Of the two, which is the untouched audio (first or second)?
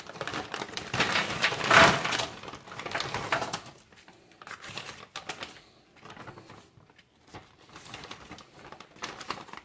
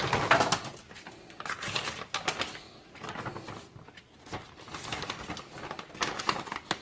second